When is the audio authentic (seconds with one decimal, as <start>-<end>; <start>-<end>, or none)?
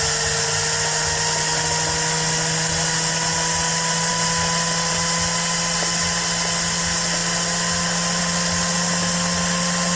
0.0-10.0